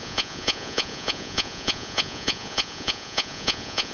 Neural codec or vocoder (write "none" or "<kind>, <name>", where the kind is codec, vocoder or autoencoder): vocoder, Vocos